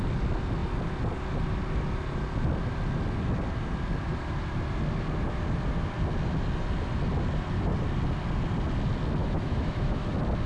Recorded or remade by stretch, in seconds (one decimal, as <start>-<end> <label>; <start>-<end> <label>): 0.0-9.2 recorded; 9.2-10.1 remade; 10.1-10.5 recorded